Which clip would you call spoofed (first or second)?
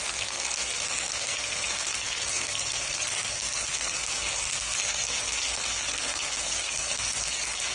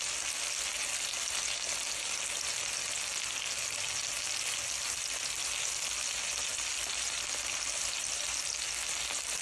first